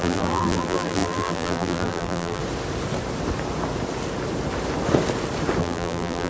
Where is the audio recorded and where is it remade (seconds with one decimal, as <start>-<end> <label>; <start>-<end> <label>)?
0.0-2.4 remade; 2.4-5.6 recorded; 5.6-6.3 remade